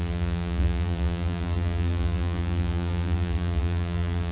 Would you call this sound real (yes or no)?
no